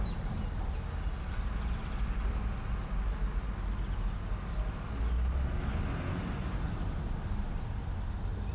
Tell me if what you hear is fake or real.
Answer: real